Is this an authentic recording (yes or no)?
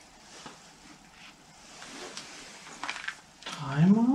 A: yes